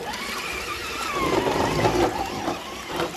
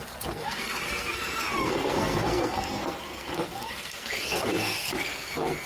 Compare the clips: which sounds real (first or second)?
first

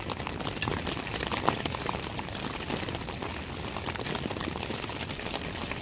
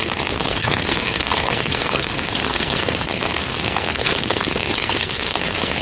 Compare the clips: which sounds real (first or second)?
first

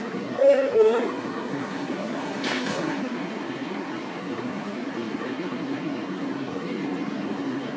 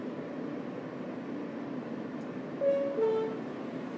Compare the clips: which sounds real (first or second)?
second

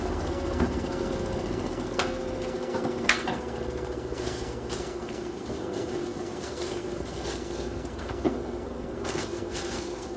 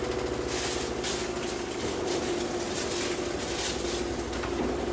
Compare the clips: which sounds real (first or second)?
second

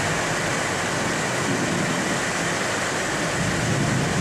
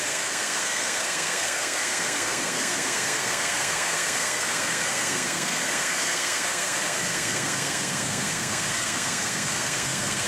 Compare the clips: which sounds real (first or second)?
first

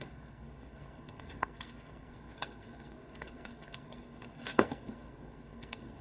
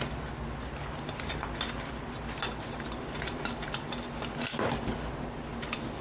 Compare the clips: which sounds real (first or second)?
second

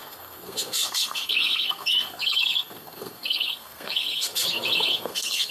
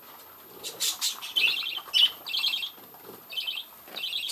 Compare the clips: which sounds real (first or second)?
second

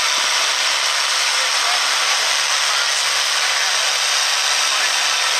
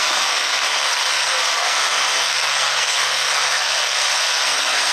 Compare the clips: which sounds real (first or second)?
first